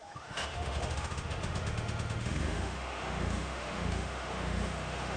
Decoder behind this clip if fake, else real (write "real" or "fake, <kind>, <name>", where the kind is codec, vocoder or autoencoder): fake, autoencoder, DAC-VAE